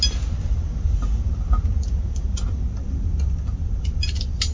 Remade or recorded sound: recorded